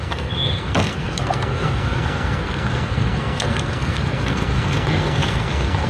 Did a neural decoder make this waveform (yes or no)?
yes